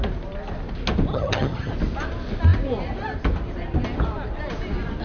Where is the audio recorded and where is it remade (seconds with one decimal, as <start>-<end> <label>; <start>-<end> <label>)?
0.0-1.1 recorded; 1.1-1.7 remade; 1.7-5.0 recorded